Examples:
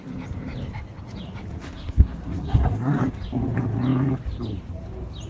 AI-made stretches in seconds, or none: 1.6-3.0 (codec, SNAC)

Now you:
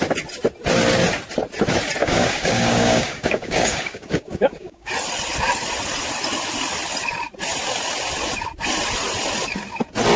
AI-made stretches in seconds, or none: 2.0-4.9 (codec, DAC)